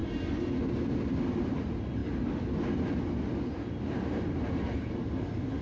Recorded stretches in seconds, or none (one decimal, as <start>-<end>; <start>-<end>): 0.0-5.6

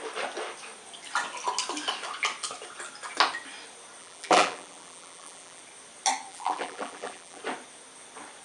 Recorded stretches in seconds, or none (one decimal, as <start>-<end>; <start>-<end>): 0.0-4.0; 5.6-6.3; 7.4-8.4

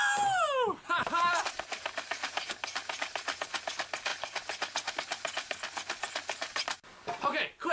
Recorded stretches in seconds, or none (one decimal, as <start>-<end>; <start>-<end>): 0.0-7.7

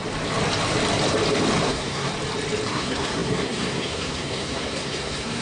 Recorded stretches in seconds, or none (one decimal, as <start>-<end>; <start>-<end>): 0.0-1.6; 2.1-2.7